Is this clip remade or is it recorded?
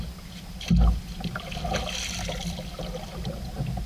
recorded